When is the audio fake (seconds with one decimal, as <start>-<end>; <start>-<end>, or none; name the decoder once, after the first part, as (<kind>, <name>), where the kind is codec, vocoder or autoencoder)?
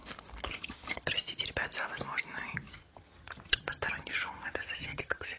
0.5-1.2 (vocoder, HiFi-GAN); 2.7-5.4